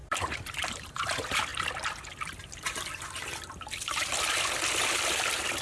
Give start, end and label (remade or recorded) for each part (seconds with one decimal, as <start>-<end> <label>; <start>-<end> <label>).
0.0-0.9 remade; 0.9-5.6 recorded